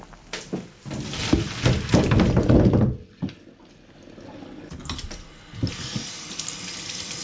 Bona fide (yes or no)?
yes